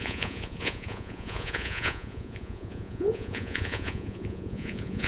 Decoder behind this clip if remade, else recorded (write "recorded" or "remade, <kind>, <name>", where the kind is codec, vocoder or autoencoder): remade, vocoder, Vocos